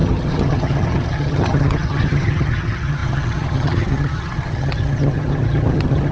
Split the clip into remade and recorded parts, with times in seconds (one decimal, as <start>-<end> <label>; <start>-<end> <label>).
0.0-6.1 remade